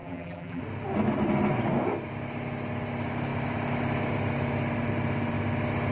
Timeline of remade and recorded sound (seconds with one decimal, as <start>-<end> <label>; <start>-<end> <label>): 0.0-0.6 remade; 0.6-5.9 recorded